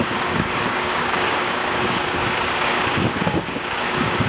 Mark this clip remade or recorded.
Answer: remade